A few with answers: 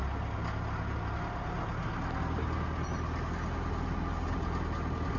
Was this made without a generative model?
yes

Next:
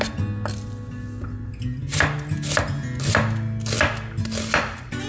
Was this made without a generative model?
yes